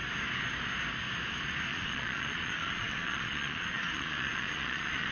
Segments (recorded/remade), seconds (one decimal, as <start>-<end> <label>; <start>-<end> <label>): 0.0-1.7 recorded; 1.7-5.1 remade